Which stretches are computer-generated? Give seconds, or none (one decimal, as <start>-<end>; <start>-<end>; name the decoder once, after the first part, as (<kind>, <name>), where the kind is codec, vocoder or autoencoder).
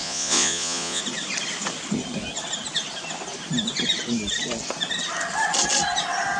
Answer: 0.0-1.0 (vocoder, Vocos)